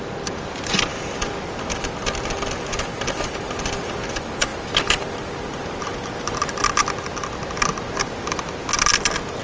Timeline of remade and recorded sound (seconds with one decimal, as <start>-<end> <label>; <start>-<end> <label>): 0.0-9.4 recorded